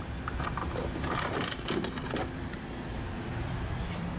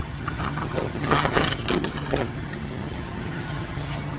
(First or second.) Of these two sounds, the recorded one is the first